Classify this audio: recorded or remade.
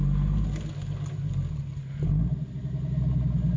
recorded